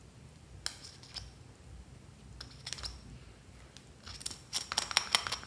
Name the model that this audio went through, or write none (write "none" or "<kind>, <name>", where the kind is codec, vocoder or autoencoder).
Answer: none